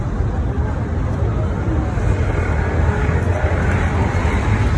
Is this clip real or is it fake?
real